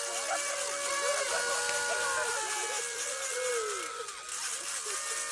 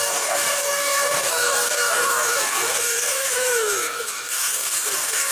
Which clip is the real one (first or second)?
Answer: first